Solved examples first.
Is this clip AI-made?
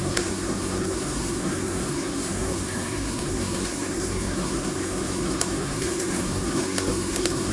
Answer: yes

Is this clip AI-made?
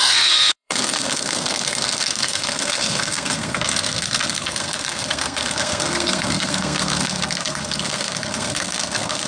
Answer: yes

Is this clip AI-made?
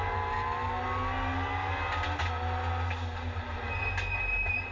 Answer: no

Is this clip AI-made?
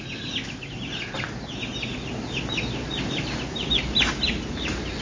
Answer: no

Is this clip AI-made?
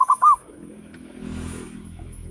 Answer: yes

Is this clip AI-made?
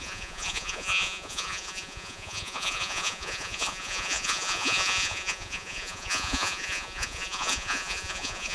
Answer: yes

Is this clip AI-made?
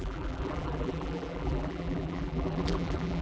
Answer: yes